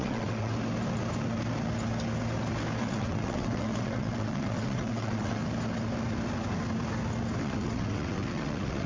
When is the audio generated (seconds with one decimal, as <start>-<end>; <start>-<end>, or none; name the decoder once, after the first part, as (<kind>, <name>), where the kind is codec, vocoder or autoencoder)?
0.0-0.5 (vocoder, WaveNeXt); 2.8-5.4; 7.4-8.9